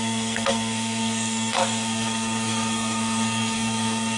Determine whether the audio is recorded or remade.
remade